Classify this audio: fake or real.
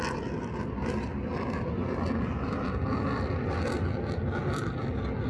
real